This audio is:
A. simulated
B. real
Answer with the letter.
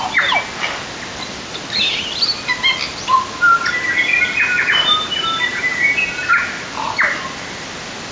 B